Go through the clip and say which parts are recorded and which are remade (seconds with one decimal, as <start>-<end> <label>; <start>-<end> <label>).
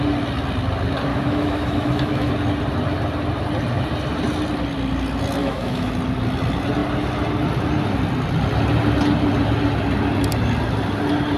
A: 0.0-1.1 recorded; 1.1-2.3 remade; 2.3-5.4 recorded; 5.4-5.9 remade; 5.9-11.4 recorded